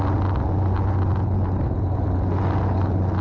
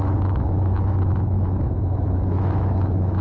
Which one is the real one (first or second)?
first